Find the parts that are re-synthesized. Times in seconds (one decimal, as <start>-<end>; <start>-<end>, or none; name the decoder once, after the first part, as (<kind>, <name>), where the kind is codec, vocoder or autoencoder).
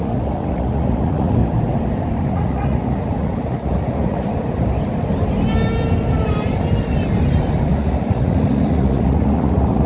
0.0-1.4 (vocoder, Vocos); 2.3-4.3; 7.7-9.9